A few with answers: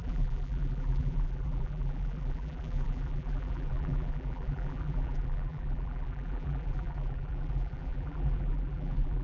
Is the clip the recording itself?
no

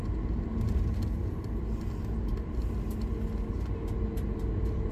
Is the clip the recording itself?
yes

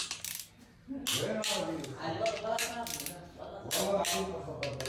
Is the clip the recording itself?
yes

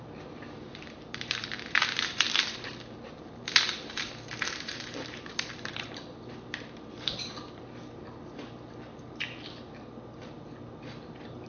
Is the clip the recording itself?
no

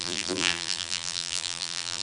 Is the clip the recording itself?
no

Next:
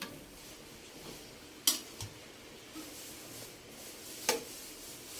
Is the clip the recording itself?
yes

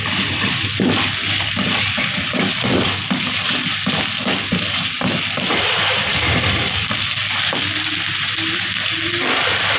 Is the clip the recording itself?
no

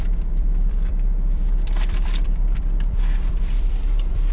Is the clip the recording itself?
no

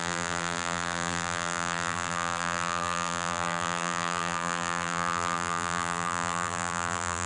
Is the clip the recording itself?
no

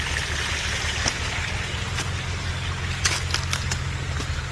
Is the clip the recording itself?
yes